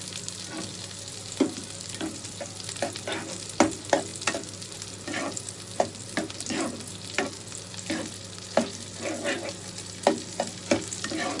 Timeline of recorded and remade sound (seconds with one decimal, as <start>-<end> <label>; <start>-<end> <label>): 0.0-11.4 recorded